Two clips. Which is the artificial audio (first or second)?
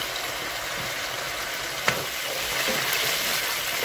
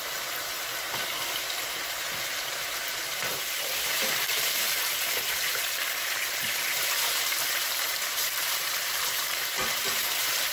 second